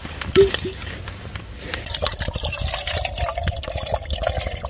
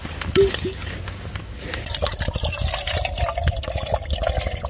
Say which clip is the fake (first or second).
first